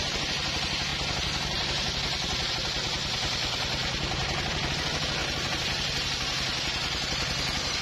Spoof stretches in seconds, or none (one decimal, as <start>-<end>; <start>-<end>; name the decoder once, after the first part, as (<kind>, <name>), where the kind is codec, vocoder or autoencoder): none